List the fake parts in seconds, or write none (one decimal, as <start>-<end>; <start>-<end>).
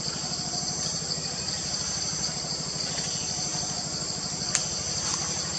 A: 0.0-3.5; 4.7-5.6